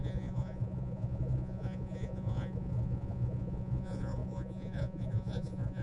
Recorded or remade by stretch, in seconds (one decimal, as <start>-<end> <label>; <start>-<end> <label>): 0.0-5.8 remade